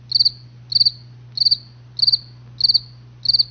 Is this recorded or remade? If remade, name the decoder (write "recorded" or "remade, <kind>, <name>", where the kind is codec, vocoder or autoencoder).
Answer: recorded